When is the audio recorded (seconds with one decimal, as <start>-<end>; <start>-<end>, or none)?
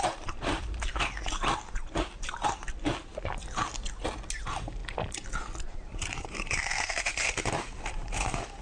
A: 3.1-4.3; 4.8-5.6